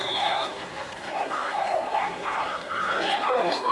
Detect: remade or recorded remade